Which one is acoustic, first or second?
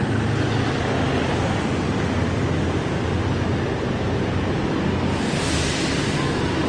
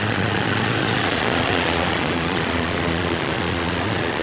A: first